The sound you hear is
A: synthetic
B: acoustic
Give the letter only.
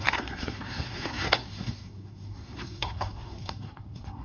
A